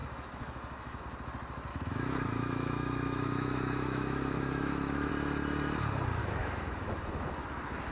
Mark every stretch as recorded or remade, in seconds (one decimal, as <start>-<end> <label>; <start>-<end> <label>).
0.0-1.0 remade; 1.0-1.7 recorded; 1.7-5.1 remade; 5.1-6.2 recorded; 6.2-7.5 remade; 7.5-7.9 recorded